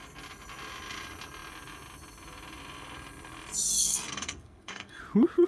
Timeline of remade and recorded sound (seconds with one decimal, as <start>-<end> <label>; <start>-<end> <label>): 0.0-3.8 recorded; 3.8-5.0 remade; 5.0-5.5 recorded